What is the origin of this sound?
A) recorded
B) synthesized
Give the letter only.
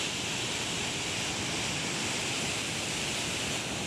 A